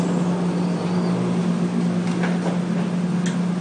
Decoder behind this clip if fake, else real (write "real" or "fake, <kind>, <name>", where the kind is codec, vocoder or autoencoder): real